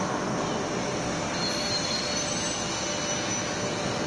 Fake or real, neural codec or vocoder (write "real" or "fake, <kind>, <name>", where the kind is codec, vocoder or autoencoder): real